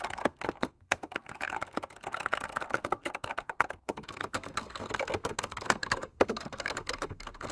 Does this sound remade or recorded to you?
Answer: remade